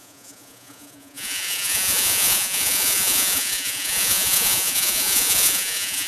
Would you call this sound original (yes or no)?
no